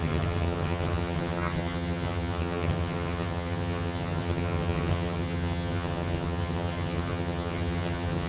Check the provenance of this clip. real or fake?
fake